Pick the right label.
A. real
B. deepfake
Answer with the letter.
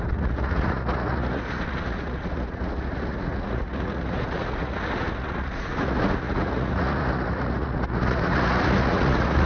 B